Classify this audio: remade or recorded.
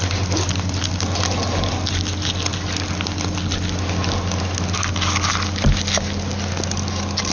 recorded